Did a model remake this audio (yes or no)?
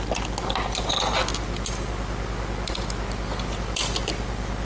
no